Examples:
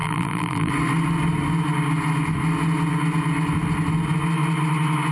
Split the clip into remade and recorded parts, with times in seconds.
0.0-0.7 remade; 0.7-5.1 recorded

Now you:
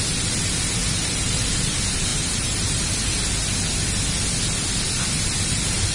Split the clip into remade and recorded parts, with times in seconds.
0.0-0.8 recorded; 0.8-1.4 remade; 1.4-2.1 recorded; 2.1-2.9 remade; 2.9-5.9 recorded

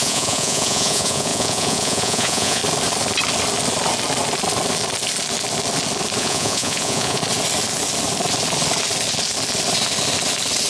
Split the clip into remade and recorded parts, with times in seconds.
0.0-2.6 remade; 2.6-6.2 recorded; 6.2-7.2 remade; 7.2-10.7 recorded

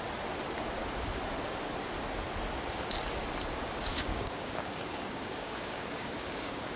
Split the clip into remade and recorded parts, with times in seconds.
0.0-3.9 recorded; 3.9-6.8 remade

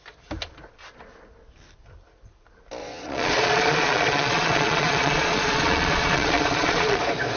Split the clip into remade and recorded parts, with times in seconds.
0.0-2.8 recorded; 2.8-7.0 remade; 7.0-7.4 recorded

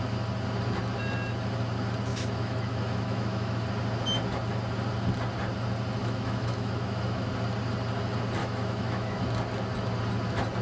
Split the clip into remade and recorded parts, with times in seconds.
0.0-2.1 recorded; 2.1-3.6 remade; 3.6-6.0 recorded; 6.0-7.3 remade; 7.3-8.4 recorded; 8.4-9.2 remade; 9.2-10.6 recorded

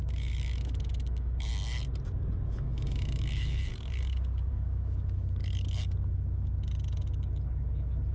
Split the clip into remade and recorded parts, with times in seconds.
0.0-1.5 remade; 1.5-2.5 recorded; 2.5-3.7 remade; 3.7-4.5 recorded; 4.5-5.4 remade; 5.4-8.1 recorded

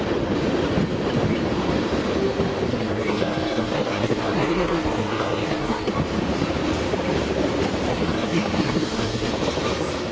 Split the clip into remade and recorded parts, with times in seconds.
0.0-2.7 recorded; 2.7-5.9 remade; 5.9-7.9 recorded; 7.9-9.3 remade; 9.3-10.1 recorded